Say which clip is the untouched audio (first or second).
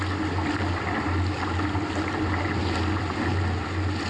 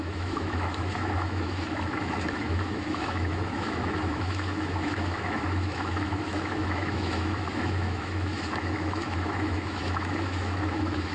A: first